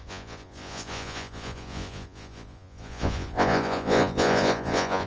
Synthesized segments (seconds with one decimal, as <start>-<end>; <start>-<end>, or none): 0.0-5.1